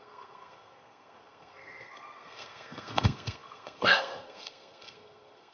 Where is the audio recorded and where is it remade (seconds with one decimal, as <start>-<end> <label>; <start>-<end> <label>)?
0.0-5.5 remade